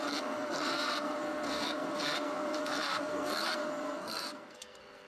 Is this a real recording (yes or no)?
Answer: no